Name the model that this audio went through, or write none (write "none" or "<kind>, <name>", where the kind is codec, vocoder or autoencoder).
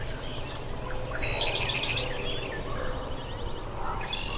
none